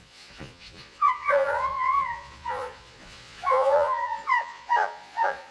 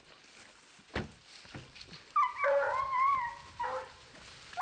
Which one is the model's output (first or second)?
first